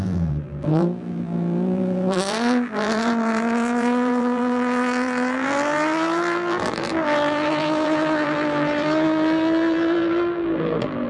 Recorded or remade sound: remade